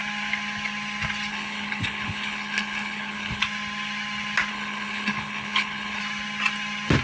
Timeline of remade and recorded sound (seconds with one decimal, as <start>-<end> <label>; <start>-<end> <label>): 0.0-1.3 recorded; 1.3-3.4 remade; 3.4-4.5 recorded; 4.5-6.0 remade; 6.0-7.0 recorded